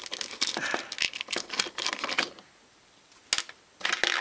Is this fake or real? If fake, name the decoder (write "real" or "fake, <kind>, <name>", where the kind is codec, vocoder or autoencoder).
real